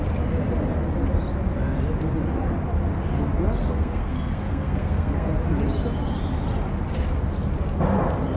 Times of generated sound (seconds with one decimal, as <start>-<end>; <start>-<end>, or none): 3.6-5.3